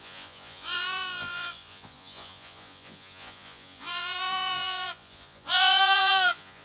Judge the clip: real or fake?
fake